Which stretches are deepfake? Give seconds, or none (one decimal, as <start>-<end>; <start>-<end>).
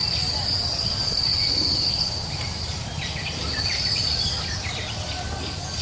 1.3-4.7